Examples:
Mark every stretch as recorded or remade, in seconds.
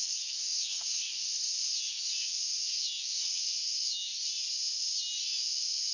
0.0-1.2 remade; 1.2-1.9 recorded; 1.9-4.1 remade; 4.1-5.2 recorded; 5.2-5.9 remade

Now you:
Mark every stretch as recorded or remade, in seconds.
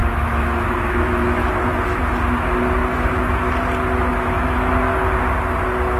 0.0-2.0 remade; 2.0-2.8 recorded; 2.8-3.4 remade; 3.4-4.1 recorded; 4.1-4.7 remade; 4.7-6.0 recorded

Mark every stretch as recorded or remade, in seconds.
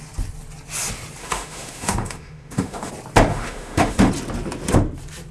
0.0-1.2 recorded; 1.2-2.9 remade; 2.9-3.3 recorded; 3.3-4.1 remade; 4.1-5.3 recorded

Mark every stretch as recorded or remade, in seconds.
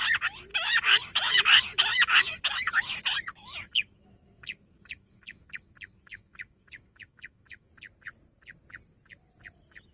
0.0-0.5 recorded; 0.5-3.0 remade; 3.0-3.4 recorded; 3.4-7.7 remade; 7.7-9.9 recorded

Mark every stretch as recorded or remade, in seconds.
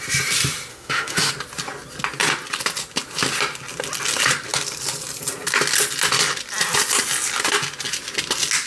0.0-0.7 recorded; 0.7-1.3 remade; 1.3-8.7 recorded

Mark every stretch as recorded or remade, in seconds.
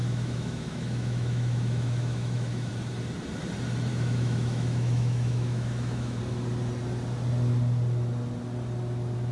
0.0-2.7 remade; 2.7-3.9 recorded; 3.9-6.2 remade; 6.2-9.3 recorded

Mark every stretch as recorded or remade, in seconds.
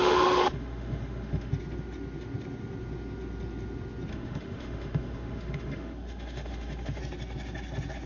0.0-1.5 remade; 1.5-4.1 recorded; 4.1-7.0 remade; 7.0-8.1 recorded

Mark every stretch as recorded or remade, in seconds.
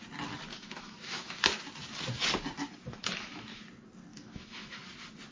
0.0-0.5 recorded; 0.5-1.4 remade; 1.4-3.0 recorded; 3.0-3.6 remade; 3.6-4.1 recorded; 4.1-4.8 remade; 4.8-5.3 recorded